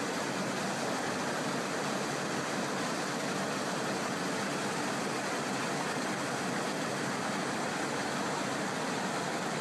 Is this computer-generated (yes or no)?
no